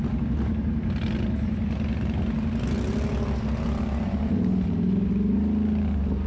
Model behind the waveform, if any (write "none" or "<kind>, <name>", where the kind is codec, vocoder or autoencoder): none